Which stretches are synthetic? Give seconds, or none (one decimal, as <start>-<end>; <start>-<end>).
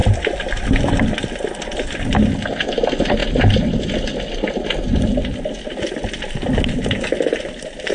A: 0.0-1.2